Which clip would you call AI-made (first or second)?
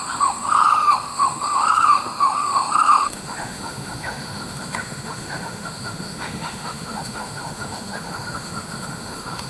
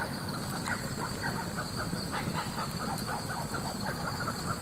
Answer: first